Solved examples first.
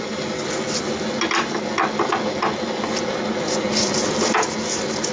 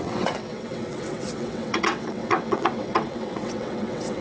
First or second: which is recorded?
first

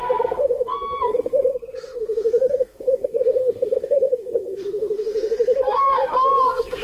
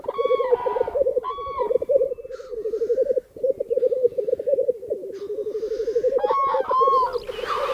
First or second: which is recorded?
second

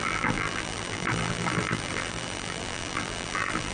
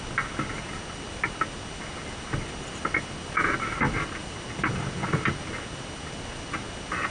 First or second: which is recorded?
second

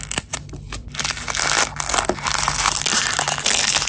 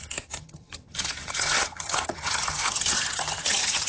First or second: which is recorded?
first